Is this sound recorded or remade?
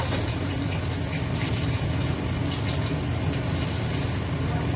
recorded